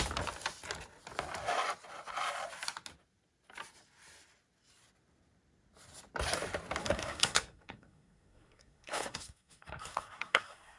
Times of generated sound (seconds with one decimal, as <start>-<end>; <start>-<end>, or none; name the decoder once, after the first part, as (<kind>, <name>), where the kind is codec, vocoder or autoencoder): 6.8-10.8 (codec, SNAC)